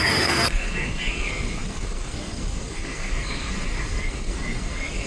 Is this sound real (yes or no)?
no